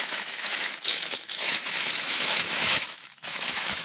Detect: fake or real fake